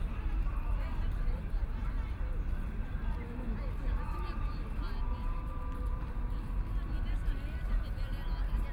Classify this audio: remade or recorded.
recorded